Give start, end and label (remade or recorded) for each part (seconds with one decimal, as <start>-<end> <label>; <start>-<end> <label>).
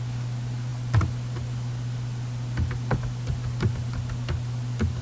0.0-5.0 recorded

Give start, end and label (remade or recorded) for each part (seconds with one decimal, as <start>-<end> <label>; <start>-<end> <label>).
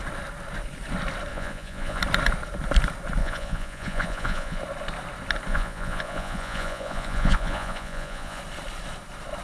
0.0-1.3 recorded; 1.3-2.0 remade; 2.0-3.2 recorded; 3.2-4.6 remade; 4.6-5.5 recorded; 5.5-8.4 remade; 8.4-9.4 recorded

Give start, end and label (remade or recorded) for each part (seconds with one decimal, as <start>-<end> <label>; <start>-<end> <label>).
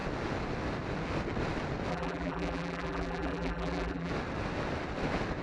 0.0-1.9 recorded; 1.9-4.1 remade; 4.1-5.4 recorded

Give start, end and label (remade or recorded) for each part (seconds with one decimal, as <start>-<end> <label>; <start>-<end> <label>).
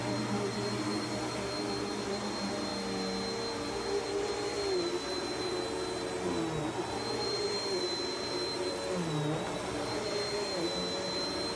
0.0-11.6 recorded